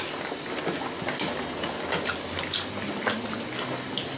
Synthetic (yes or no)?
no